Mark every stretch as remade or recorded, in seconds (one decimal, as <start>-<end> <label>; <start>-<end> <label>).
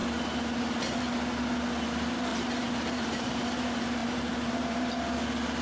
0.0-2.3 recorded; 2.3-3.4 remade; 3.4-4.0 recorded; 4.0-4.9 remade; 4.9-5.6 recorded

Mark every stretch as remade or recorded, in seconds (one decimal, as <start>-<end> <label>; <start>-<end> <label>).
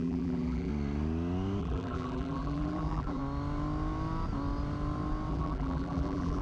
0.0-0.7 remade; 0.7-1.6 recorded; 1.6-3.2 remade; 3.2-5.3 recorded; 5.3-6.4 remade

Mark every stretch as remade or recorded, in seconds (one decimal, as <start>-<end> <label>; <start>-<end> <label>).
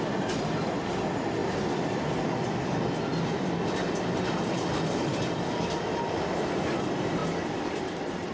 0.0-1.4 recorded; 1.4-2.7 remade; 2.7-8.3 recorded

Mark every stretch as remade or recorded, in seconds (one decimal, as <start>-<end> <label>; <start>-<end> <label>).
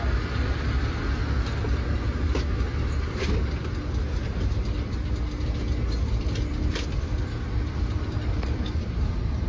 0.0-1.2 remade; 1.2-6.2 recorded; 6.2-9.5 remade